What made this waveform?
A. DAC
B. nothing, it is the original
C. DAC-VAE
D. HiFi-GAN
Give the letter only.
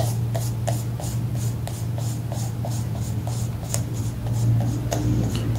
B